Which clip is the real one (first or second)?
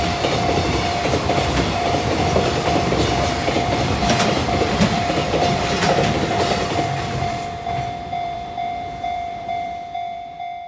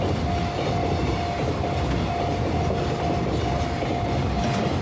second